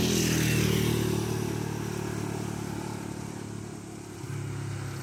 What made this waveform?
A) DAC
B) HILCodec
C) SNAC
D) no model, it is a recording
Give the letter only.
D